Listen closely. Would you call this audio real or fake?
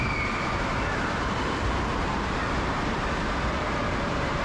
fake